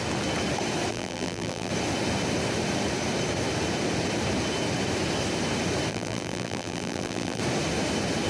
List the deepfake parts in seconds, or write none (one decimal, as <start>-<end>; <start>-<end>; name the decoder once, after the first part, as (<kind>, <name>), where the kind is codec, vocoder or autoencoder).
0.9-1.7 (vocoder, BigVGAN v2); 5.9-7.4